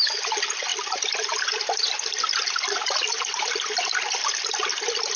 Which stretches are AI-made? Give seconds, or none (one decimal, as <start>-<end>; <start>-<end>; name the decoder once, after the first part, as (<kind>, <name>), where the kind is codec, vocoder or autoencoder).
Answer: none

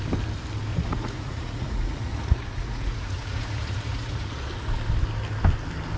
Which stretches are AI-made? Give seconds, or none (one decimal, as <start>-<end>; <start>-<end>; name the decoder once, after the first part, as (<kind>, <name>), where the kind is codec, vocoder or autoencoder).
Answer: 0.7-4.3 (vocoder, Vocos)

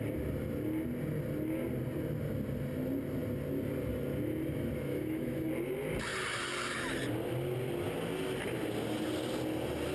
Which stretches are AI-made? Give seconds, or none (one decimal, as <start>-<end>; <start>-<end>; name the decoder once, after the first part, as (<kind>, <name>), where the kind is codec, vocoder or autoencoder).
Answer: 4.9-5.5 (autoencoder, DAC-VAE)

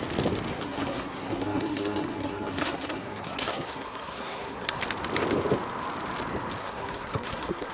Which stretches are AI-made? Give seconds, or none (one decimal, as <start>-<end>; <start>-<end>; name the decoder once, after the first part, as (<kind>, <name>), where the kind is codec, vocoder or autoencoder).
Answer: 0.5-4.8 (codec, SNAC); 6.6-7.7

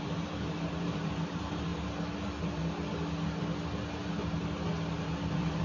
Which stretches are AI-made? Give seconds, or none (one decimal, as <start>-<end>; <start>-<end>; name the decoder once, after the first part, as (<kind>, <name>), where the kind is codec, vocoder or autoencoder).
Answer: 0.0-1.7 (vocoder, BigVGAN v2); 5.0-5.6

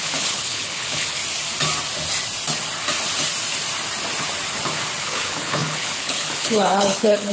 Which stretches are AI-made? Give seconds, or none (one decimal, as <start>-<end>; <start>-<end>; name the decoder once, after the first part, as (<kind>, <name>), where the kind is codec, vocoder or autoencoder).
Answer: 0.0-1.2 (codec, HILCodec); 5.0-7.3